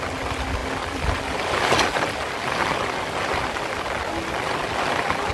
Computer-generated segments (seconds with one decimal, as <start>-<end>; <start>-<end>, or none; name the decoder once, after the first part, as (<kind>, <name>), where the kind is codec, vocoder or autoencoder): none